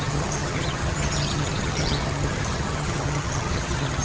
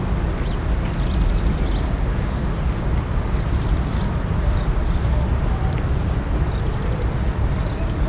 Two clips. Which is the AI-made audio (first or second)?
first